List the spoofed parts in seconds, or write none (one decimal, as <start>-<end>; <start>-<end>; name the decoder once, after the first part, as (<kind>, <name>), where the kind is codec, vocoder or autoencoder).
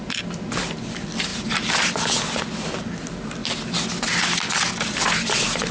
0.0-3.4 (vocoder, BigVGAN v2); 5.0-5.7